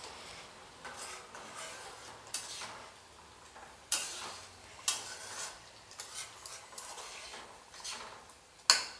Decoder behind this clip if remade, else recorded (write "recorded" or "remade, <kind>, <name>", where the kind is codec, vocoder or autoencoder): recorded